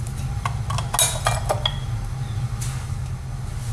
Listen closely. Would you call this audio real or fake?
real